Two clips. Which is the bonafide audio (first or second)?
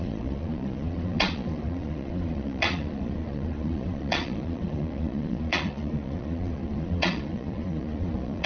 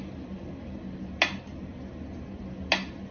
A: second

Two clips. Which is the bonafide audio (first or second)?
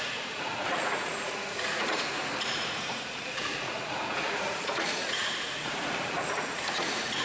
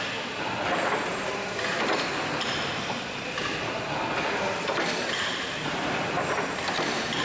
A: second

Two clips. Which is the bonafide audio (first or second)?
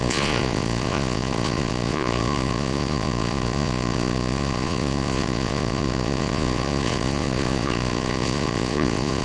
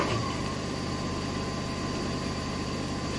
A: second